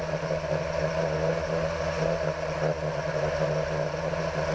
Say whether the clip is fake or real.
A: real